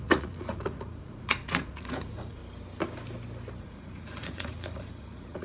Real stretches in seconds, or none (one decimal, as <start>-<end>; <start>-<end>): 2.4-3.6

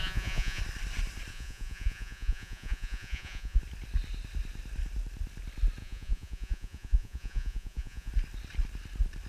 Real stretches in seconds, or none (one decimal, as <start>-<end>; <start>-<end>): 0.6-1.3; 3.6-5.8; 8.1-9.3

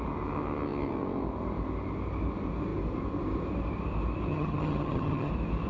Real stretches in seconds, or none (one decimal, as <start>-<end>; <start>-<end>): 0.0-4.3; 5.3-5.7

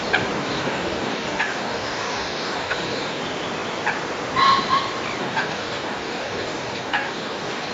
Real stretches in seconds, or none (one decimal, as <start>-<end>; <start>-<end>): 0.0-0.4; 3.2-5.2

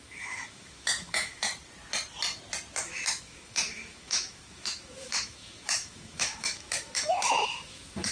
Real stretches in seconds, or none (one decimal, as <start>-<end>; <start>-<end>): 1.5-2.8

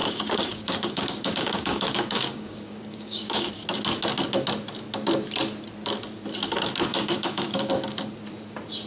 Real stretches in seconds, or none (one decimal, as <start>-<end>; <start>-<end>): 3.5-6.9; 7.7-8.9

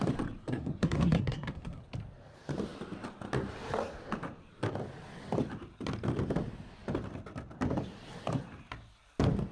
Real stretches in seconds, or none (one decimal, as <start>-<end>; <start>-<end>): 0.0-0.4; 1.8-9.5

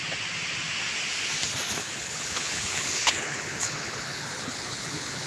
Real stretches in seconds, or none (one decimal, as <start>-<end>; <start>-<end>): 0.0-1.8